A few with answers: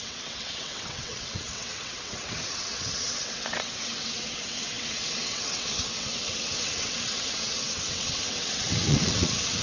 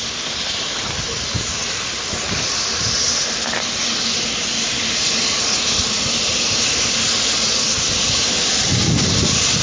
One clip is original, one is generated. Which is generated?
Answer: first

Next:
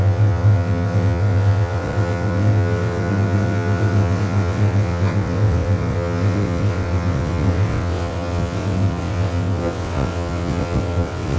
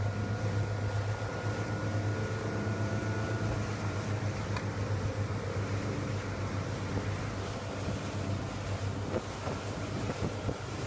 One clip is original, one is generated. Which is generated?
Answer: first